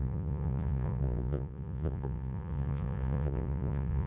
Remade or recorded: remade